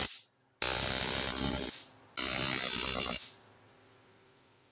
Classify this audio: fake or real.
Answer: real